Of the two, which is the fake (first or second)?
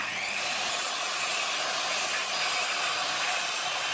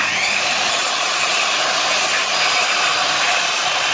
second